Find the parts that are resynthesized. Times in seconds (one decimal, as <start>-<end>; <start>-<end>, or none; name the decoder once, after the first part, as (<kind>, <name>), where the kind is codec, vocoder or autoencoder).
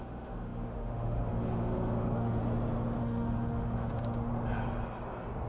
0.0-2.4 (autoencoder, DAC-VAE); 3.0-4.3